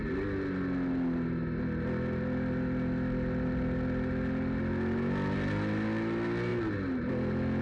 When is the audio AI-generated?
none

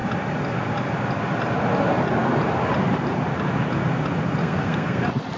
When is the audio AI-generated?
4.4-5.0 (codec, SNAC)

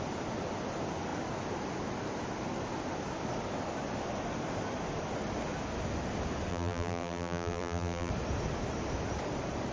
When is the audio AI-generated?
6.5-8.1 (vocoder, BigVGAN v2)

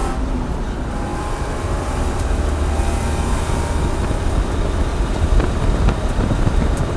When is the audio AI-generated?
0.0-0.6 (vocoder, BigVGAN v2); 1.1-2.5; 4.9-6.6

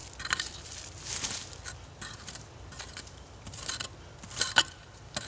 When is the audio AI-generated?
none